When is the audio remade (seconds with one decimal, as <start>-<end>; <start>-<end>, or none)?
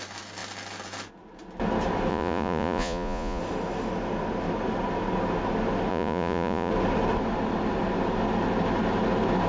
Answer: 2.1-3.4; 5.9-6.7